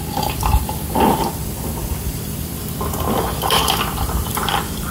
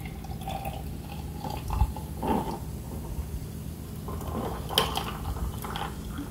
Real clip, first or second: second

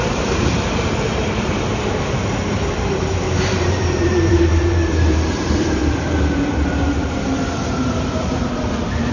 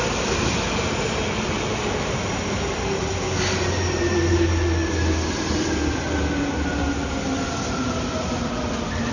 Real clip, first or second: second